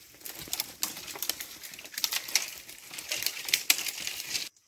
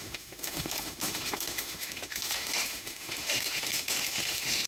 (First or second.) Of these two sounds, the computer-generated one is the second